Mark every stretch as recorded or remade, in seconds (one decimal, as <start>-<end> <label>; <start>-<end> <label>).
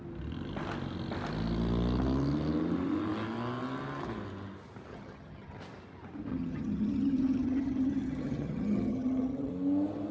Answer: 0.0-4.9 recorded; 4.9-5.6 remade; 5.6-6.3 recorded; 6.3-9.5 remade; 9.5-10.1 recorded